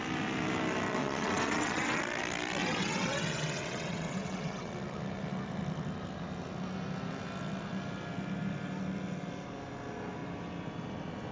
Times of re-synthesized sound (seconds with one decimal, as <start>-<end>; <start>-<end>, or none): 1.0-2.0; 2.6-4.7